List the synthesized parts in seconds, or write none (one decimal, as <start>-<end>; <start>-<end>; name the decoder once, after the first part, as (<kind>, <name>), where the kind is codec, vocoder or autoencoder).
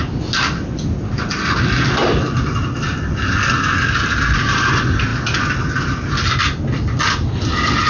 none